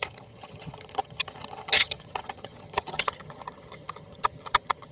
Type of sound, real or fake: fake